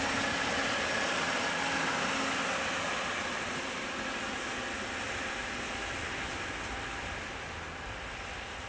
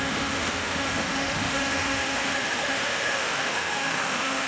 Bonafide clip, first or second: first